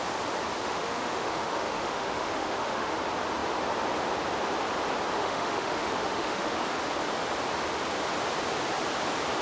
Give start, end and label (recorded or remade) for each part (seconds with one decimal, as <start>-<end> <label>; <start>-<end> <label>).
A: 0.0-0.6 recorded; 0.6-2.9 remade; 2.9-5.2 recorded; 5.2-6.6 remade; 6.6-9.4 recorded